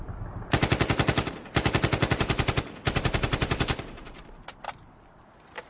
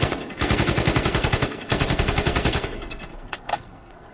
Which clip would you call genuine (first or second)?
first